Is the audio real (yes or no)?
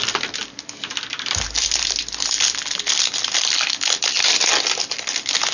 yes